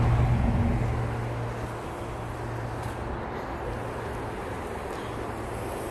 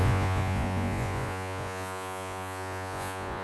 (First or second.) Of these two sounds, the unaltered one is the first